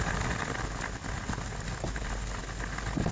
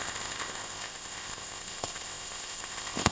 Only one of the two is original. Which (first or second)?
first